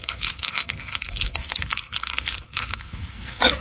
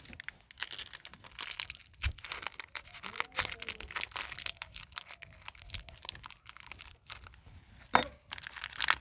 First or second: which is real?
second